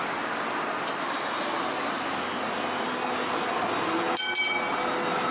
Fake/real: real